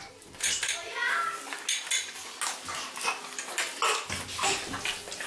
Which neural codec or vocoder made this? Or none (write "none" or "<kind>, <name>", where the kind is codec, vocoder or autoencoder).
none